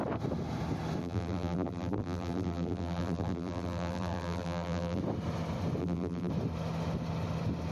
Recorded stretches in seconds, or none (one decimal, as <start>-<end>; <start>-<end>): 0.0-1.0; 5.0-5.8; 6.3-7.7